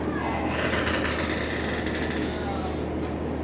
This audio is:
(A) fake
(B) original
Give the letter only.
B